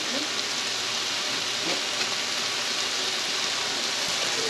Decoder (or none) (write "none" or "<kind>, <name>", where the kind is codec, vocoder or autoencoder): none